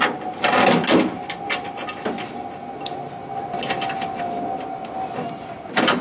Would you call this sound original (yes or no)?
yes